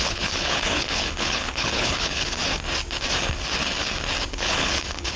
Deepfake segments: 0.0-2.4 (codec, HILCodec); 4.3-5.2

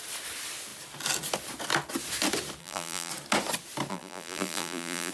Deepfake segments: 2.6-3.1 (vocoder, BigVGAN v2); 3.9-5.1

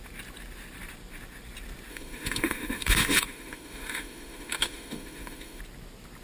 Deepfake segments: 1.9-5.6 (autoencoder, DAC-VAE)

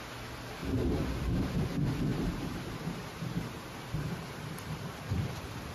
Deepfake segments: 2.1-5.7 (vocoder, BigVGAN v2)

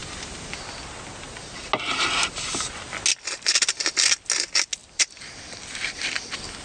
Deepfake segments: 4.8-5.5 (vocoder, BigVGAN v2)

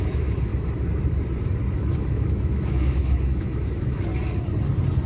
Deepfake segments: 0.0-0.5 (autoencoder, DAC-VAE); 1.7-4.1

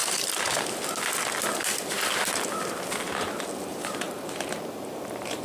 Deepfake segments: 3.7-5.4 (vocoder, BigVGAN v2)